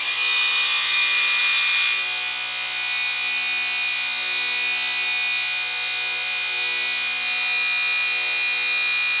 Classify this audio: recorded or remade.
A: recorded